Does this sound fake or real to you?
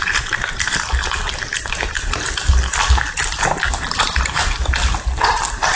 real